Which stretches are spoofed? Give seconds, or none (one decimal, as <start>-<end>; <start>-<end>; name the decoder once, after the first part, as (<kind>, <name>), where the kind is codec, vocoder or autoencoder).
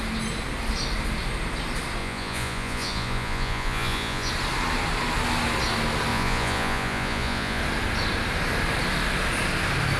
2.0-4.3 (vocoder, Vocos); 6.1-7.6